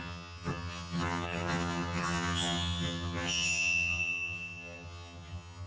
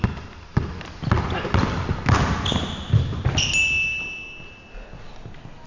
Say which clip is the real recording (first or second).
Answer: second